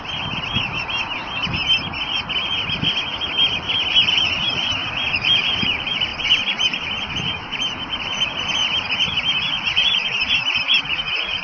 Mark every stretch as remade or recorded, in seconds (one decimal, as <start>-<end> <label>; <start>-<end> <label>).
0.0-0.7 remade; 0.7-3.9 recorded; 3.9-11.4 remade